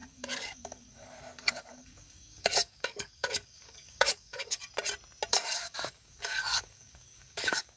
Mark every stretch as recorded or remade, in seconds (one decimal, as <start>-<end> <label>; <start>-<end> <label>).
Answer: 0.0-4.6 remade; 4.6-5.3 recorded; 5.3-7.8 remade